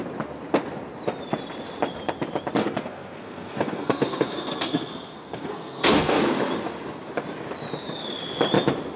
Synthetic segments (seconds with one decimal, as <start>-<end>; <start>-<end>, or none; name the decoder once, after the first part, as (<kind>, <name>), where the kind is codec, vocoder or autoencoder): 2.6-6.2 (codec, SNAC)